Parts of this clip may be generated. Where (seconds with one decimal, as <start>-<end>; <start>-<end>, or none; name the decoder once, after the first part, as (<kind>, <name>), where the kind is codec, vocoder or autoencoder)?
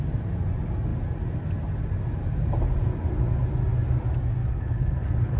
4.4-5.4 (codec, HILCodec)